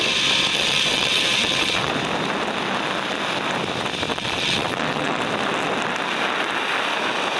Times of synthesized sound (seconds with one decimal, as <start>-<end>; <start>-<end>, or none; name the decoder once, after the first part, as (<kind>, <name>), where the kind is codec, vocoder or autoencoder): 0.5-1.9 (vocoder, WaveNeXt); 4.1-5.2